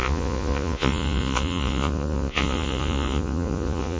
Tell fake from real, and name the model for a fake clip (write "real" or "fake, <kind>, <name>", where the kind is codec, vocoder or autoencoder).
fake, vocoder, Vocos